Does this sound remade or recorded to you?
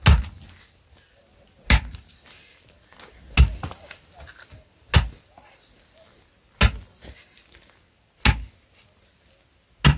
recorded